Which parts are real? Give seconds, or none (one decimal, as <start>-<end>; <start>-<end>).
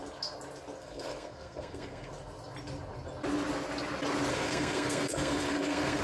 0.0-0.8; 2.1-4.3